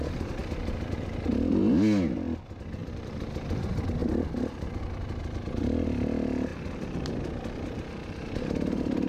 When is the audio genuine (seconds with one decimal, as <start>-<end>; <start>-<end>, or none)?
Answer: 0.0-2.8; 3.6-4.0; 4.8-9.1